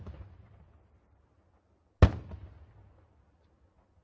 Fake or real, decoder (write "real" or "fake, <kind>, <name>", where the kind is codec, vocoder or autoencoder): real